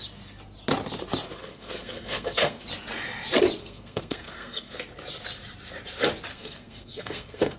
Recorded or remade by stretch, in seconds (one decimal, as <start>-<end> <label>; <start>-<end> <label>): 0.0-1.4 recorded; 1.4-2.6 remade; 2.6-3.6 recorded; 3.6-4.8 remade; 4.8-6.3 recorded; 6.3-7.6 remade